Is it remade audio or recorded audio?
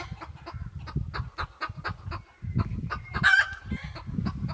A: recorded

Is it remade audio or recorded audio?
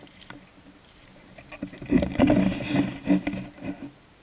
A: recorded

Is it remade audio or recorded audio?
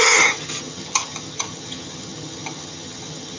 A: remade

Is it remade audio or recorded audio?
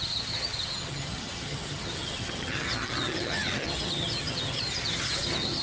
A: remade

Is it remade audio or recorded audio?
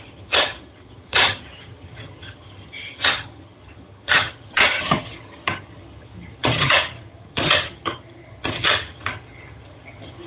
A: remade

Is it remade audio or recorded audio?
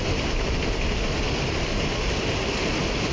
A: recorded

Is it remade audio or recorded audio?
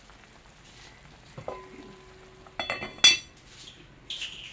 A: recorded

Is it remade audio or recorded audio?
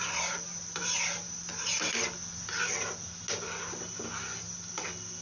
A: recorded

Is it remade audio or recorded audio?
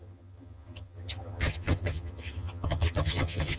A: remade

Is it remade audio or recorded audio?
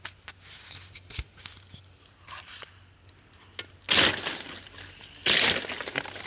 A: recorded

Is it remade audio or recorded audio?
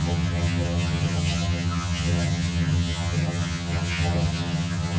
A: remade